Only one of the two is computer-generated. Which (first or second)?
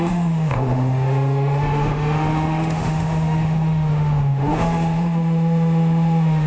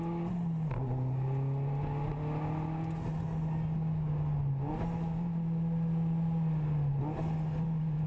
first